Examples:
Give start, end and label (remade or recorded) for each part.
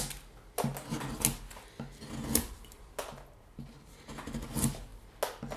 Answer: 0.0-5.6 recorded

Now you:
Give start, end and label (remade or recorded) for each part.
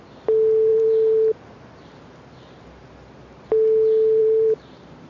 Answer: 0.0-0.7 recorded; 0.7-2.0 remade; 2.0-4.2 recorded; 4.2-5.1 remade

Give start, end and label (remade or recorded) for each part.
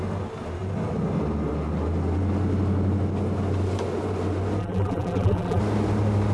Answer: 0.0-4.6 recorded; 4.6-5.6 remade; 5.6-6.3 recorded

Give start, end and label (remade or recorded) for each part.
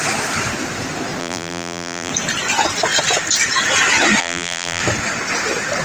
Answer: 0.0-1.2 recorded; 1.2-2.1 remade; 2.1-4.2 recorded; 4.2-4.8 remade; 4.8-5.8 recorded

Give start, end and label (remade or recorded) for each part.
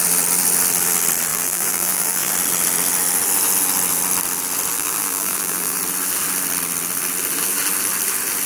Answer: 0.0-1.3 recorded; 1.3-2.3 remade; 2.3-4.7 recorded; 4.7-5.8 remade; 5.8-8.5 recorded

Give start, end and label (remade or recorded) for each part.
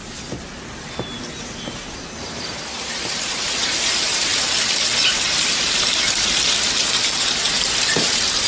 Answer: 0.0-1.7 recorded; 1.7-4.3 remade; 4.3-5.1 recorded; 5.1-8.5 remade